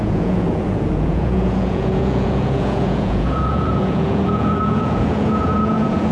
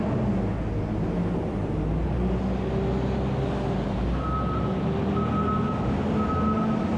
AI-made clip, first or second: first